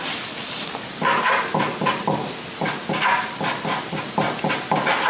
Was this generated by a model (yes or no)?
no